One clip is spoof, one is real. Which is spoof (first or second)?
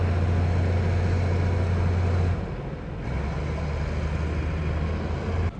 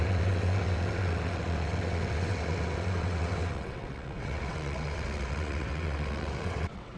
second